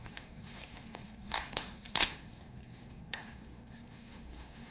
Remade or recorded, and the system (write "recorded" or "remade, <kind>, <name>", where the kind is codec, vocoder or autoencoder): remade, codec, SNAC